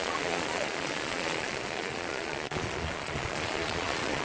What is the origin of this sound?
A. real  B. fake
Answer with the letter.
B